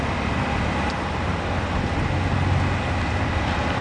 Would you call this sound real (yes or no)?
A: yes